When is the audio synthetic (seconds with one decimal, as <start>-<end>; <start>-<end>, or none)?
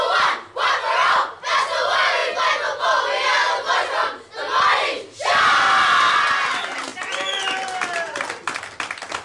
none